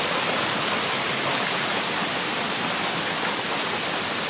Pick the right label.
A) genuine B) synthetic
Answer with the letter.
A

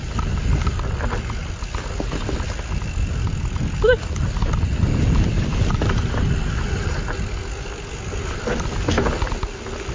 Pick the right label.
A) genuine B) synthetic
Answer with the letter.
A